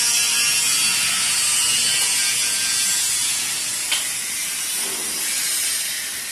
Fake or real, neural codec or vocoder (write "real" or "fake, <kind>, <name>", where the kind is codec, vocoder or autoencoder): real